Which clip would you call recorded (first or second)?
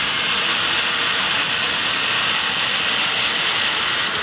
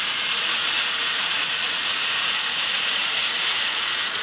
first